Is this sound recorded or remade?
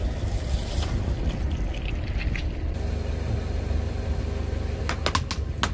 recorded